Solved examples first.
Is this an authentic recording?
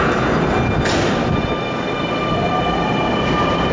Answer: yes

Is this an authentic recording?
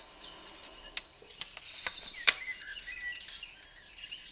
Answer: yes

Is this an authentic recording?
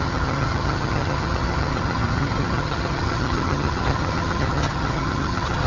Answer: no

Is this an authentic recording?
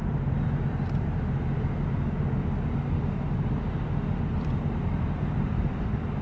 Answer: yes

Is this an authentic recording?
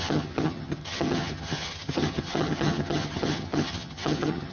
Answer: no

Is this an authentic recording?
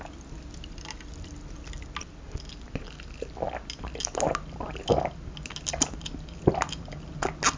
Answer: yes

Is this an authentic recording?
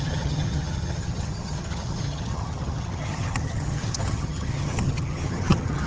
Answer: no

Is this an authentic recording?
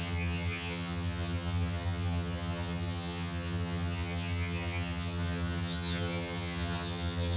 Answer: no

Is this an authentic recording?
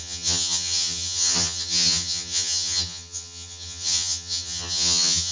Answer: no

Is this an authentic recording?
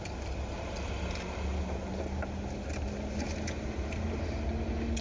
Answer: yes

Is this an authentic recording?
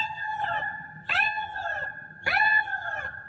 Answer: no